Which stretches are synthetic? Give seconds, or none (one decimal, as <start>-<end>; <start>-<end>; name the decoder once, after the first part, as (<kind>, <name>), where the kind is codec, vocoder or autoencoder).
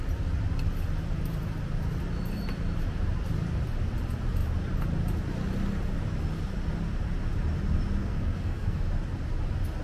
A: 8.0-8.9 (codec, SNAC)